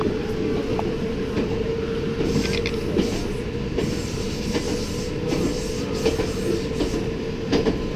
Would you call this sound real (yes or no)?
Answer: yes